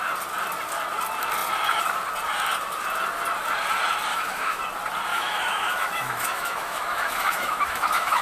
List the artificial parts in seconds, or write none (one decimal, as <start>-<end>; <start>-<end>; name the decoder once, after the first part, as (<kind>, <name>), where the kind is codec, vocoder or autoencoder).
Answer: 4.1-4.6 (autoencoder, DAC-VAE); 5.1-8.2